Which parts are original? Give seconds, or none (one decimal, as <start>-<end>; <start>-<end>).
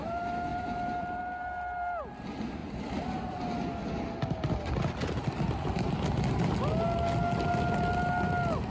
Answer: 0.0-0.5; 1.2-2.6; 3.9-8.7